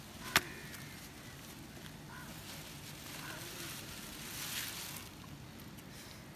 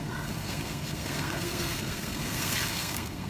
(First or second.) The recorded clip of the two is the first